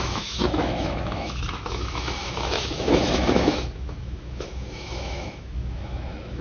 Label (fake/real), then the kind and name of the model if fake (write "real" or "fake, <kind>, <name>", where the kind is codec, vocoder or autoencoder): fake, autoencoder, DAC-VAE